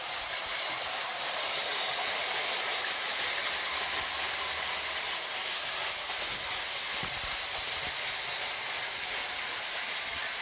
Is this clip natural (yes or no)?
yes